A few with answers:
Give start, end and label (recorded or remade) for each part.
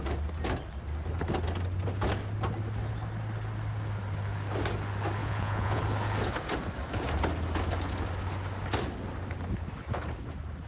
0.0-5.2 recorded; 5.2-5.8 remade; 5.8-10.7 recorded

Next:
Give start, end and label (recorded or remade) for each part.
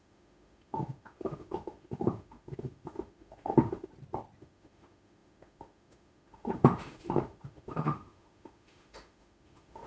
0.0-3.9 remade; 3.9-4.4 recorded; 4.4-9.9 remade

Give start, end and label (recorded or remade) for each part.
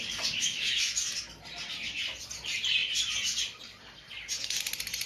0.0-0.4 recorded; 0.4-1.0 remade; 1.0-5.1 recorded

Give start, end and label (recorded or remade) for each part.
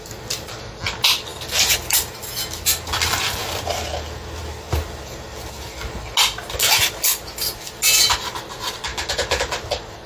0.0-10.1 recorded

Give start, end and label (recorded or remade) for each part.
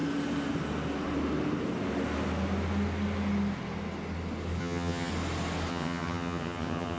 0.0-4.6 recorded; 4.6-5.1 remade; 5.1-5.7 recorded; 5.7-7.0 remade